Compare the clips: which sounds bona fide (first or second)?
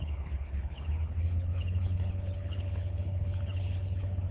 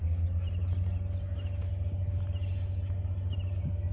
second